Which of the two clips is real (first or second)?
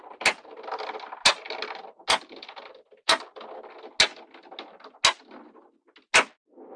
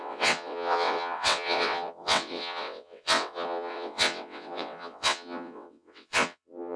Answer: first